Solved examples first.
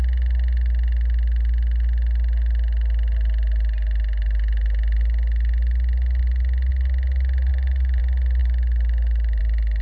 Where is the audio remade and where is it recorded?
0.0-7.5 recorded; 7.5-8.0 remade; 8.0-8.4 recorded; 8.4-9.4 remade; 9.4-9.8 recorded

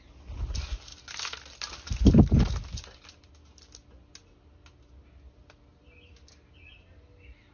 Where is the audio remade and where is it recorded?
0.0-7.5 recorded